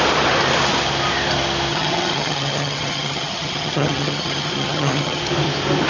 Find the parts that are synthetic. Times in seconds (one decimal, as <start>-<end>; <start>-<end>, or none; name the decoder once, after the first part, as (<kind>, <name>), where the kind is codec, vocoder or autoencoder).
1.7-5.2 (vocoder, HiFi-GAN)